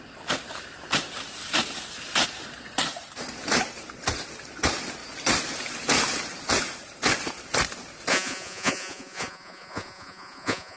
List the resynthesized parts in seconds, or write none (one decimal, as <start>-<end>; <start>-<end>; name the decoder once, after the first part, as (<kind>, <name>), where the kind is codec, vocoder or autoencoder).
8.1-10.8 (vocoder, Vocos)